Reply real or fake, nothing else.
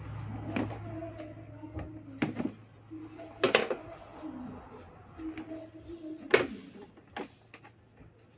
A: real